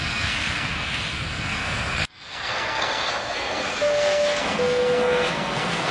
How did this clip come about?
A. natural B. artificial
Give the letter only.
B